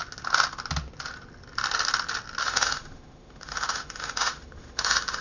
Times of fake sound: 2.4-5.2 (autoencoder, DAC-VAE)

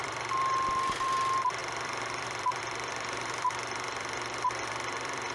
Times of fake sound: 0.0-5.3 (vocoder, BigVGAN v2)

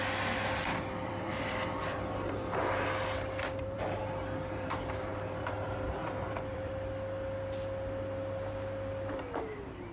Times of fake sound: 0.7-2.0 (vocoder, BigVGAN v2); 3.4-4.0; 5.1-6.7